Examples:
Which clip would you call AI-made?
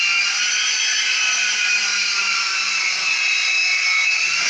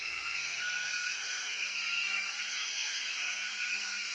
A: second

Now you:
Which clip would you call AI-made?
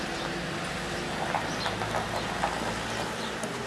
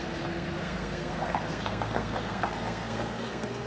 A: second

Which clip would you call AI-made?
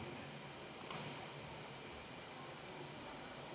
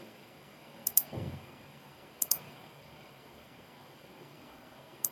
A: second